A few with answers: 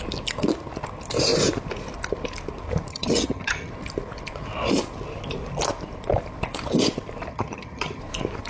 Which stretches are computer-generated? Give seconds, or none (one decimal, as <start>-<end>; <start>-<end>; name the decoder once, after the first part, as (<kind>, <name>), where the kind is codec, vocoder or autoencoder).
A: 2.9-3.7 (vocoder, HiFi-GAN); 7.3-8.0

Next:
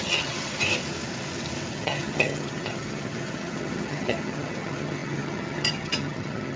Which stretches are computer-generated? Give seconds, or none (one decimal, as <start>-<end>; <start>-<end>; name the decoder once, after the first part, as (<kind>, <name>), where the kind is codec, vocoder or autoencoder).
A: 0.0-0.6 (vocoder, HiFi-GAN); 1.7-6.6

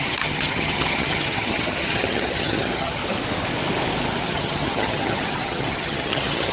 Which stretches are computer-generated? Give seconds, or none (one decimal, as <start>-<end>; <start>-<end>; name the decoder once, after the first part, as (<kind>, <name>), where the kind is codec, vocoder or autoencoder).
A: 0.0-3.0 (vocoder, HiFi-GAN); 4.2-6.5